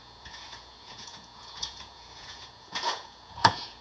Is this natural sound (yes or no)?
no